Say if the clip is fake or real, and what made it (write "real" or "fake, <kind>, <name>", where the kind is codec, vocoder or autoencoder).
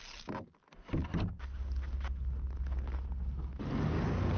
real